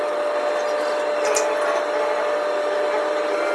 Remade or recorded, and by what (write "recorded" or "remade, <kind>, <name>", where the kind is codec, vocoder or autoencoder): recorded